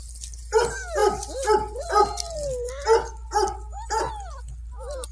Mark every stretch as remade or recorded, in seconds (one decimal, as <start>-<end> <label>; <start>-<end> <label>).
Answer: 0.0-5.1 recorded

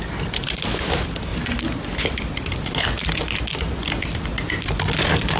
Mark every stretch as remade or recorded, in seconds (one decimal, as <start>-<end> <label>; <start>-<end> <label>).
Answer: 0.0-5.4 recorded